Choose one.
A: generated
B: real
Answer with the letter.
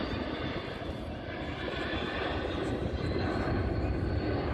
B